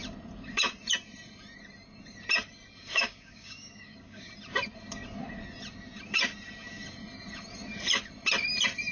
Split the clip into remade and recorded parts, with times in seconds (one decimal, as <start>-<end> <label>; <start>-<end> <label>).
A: 0.0-2.8 recorded; 2.8-4.3 remade; 4.3-8.9 recorded